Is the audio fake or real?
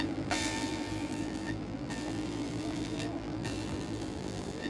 fake